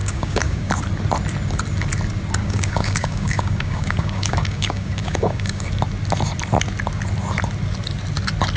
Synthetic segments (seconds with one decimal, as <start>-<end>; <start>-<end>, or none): 0.0-0.7; 2.4-5.7